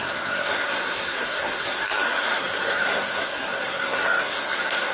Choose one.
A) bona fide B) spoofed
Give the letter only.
B